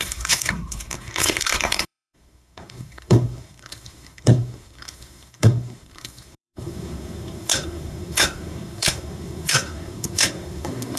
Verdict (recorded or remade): remade